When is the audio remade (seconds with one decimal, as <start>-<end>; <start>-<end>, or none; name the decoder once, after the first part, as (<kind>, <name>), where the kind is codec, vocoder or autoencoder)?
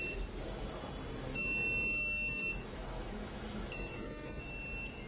1.3-4.4 (autoencoder, DAC-VAE)